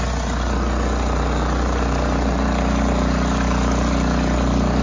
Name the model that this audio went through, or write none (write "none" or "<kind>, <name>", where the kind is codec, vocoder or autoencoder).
none